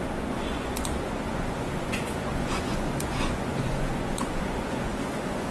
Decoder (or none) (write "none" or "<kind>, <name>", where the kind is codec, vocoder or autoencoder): vocoder, Vocos